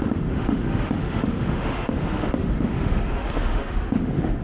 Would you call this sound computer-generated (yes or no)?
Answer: yes